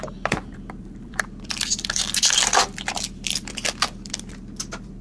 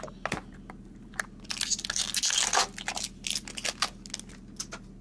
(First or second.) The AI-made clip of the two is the first